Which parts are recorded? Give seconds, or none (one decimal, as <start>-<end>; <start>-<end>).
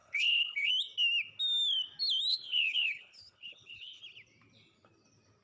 0.7-2.3; 4.0-5.4